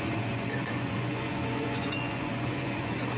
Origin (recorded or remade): remade